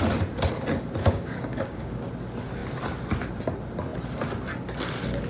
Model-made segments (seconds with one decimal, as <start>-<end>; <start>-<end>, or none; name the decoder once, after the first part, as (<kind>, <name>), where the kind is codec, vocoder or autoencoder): 1.0-2.1 (codec, DAC)